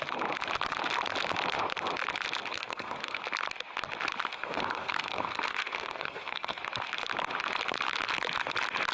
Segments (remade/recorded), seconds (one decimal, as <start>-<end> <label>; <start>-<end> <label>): 0.0-2.5 recorded; 2.5-3.2 remade; 3.2-4.3 recorded; 4.3-6.6 remade; 6.6-8.9 recorded